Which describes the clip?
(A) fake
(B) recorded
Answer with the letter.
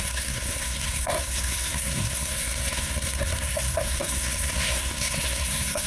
A